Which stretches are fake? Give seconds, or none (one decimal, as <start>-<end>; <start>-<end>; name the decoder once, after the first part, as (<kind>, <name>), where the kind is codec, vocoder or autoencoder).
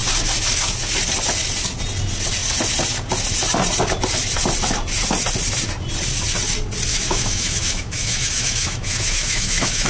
6.9-9.9 (autoencoder, DAC-VAE)